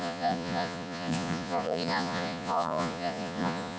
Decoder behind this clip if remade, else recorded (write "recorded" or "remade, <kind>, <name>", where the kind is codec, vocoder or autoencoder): remade, vocoder, Vocos